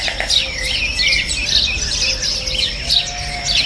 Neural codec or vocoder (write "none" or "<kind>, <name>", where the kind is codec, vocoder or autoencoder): none